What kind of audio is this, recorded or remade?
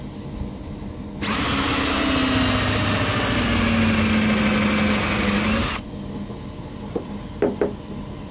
recorded